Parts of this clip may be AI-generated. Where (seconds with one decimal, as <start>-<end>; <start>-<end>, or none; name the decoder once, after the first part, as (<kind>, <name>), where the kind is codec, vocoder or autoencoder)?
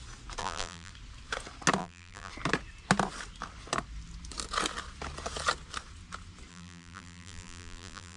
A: 0.4-0.9 (vocoder, BigVGAN v2); 1.8-2.3; 6.5-8.2